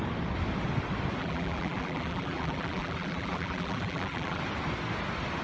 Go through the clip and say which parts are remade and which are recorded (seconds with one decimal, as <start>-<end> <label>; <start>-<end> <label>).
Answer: 0.0-1.2 recorded; 1.2-4.4 remade; 4.4-5.4 recorded